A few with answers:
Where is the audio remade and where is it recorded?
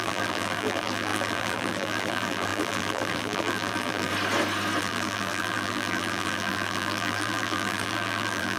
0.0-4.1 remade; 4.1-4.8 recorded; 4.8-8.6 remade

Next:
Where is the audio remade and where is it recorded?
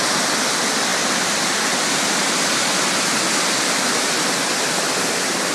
0.0-5.5 recorded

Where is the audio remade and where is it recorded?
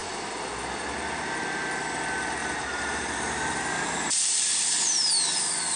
0.0-2.4 recorded; 2.4-5.1 remade; 5.1-5.8 recorded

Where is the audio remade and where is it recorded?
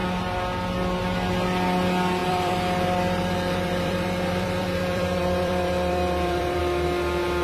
0.0-2.2 recorded; 2.2-6.6 remade; 6.6-7.4 recorded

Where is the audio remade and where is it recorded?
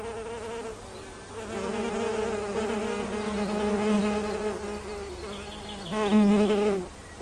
0.0-7.2 recorded